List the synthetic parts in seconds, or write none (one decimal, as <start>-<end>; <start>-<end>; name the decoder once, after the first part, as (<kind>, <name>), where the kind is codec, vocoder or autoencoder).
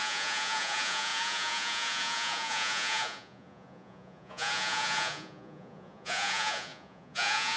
0.0-7.6 (vocoder, Vocos)